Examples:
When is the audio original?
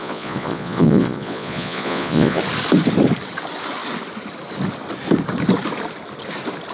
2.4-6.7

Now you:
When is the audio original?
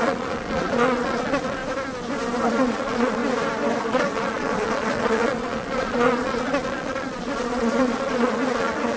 1.6-2.5; 3.2-3.8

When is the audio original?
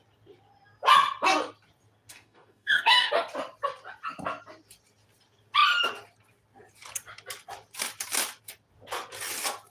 0.0-2.1; 3.1-9.7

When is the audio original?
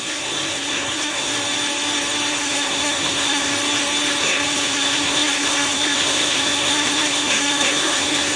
1.3-2.3; 3.5-4.2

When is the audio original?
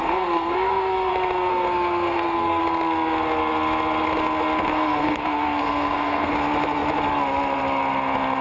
1.1-1.5; 2.6-4.7; 6.3-8.4